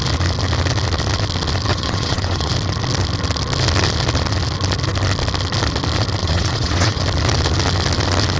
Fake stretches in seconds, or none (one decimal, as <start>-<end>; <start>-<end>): 1.7-2.5; 6.2-7.0